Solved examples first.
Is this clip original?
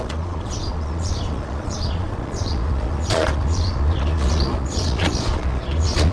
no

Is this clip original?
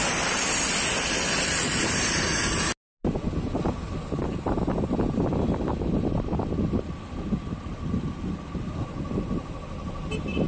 yes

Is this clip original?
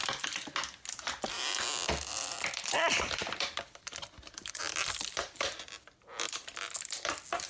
yes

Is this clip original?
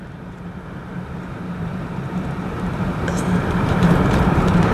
no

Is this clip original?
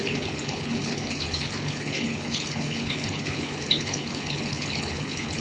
no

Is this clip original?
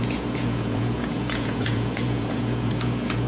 no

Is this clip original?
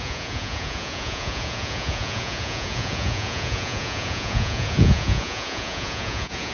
no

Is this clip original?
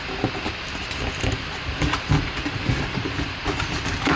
yes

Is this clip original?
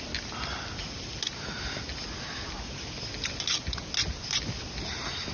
yes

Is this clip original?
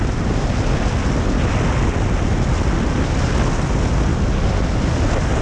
yes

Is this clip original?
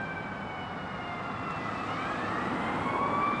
yes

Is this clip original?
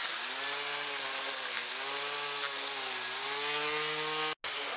yes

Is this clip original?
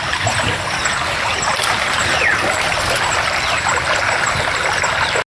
yes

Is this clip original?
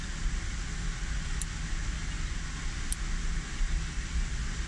yes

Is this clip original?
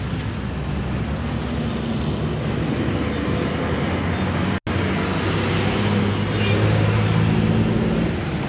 yes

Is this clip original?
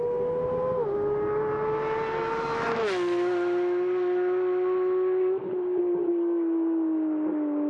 yes